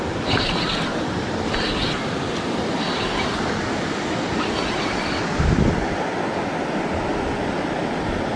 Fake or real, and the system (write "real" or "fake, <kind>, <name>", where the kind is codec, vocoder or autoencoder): real